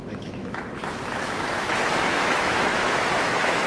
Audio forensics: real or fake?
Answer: fake